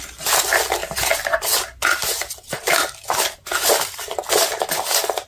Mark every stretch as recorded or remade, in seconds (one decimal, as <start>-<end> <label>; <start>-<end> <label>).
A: 0.0-5.3 recorded